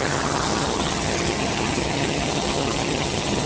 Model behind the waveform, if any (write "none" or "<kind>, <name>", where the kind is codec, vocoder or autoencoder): vocoder, HiFi-GAN